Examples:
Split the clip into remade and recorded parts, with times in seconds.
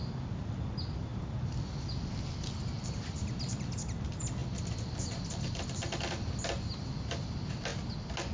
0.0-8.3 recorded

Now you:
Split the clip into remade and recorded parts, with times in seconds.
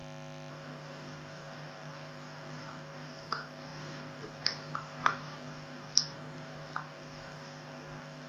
0.0-0.5 recorded; 0.5-8.3 remade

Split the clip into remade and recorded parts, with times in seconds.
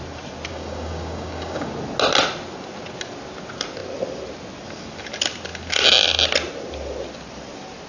0.0-0.5 recorded; 0.5-1.7 remade; 1.7-7.9 recorded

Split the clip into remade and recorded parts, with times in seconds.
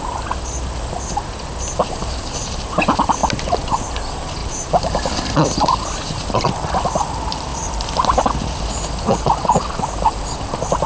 0.0-10.9 recorded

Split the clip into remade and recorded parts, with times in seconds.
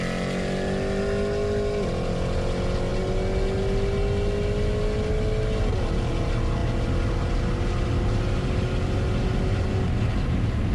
0.0-10.7 recorded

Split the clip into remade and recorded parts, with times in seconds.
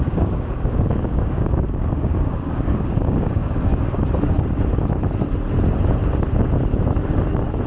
0.0-3.7 remade; 3.7-7.7 recorded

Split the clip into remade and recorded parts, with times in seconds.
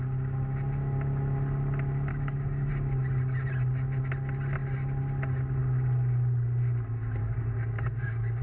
0.0-2.1 recorded; 2.1-2.7 remade; 2.7-7.2 recorded; 7.2-8.4 remade